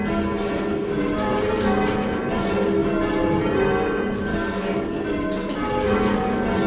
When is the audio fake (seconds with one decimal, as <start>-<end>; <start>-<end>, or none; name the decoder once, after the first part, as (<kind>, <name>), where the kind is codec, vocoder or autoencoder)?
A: 4.3-4.9 (codec, DAC)